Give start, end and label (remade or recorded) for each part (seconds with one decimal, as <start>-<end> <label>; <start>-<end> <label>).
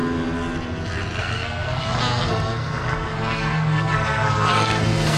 0.0-1.2 recorded; 1.2-5.2 remade